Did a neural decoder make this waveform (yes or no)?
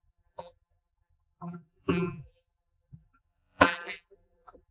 yes